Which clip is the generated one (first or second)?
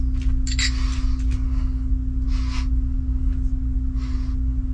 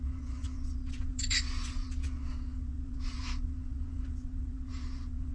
second